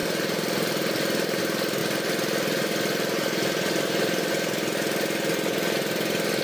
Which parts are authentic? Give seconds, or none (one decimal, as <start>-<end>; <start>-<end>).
1.4-1.8; 4.3-6.4